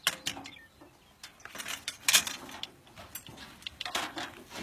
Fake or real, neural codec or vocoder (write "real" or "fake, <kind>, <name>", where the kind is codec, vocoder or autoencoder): real